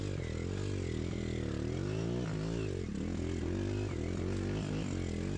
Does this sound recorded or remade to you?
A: recorded